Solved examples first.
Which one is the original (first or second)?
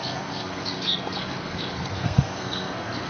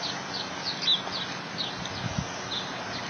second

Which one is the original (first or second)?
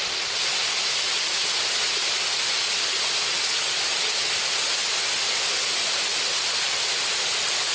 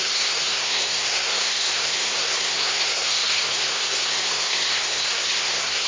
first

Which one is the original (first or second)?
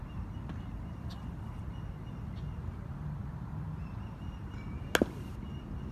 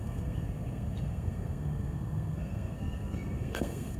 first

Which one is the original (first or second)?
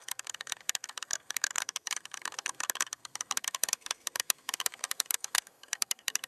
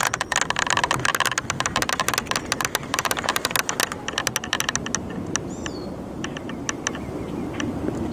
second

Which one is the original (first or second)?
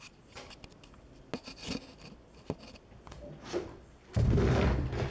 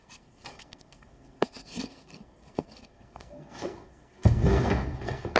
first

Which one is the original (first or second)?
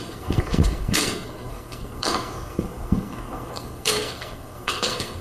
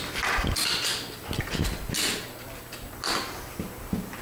second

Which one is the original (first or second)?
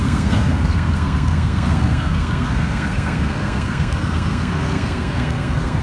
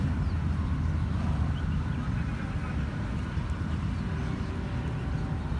second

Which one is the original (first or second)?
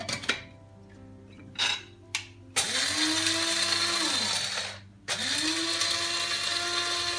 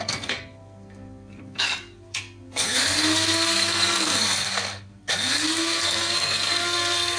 first